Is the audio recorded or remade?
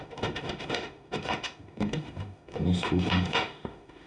remade